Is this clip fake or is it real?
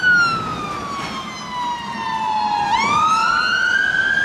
real